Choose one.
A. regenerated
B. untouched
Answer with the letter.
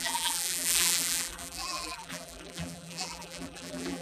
A